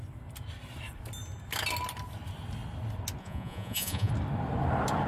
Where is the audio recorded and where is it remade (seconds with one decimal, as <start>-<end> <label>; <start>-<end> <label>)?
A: 0.0-3.2 recorded; 3.2-4.1 remade; 4.1-5.1 recorded